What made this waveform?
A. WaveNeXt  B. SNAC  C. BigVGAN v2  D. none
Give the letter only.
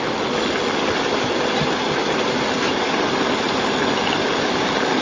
D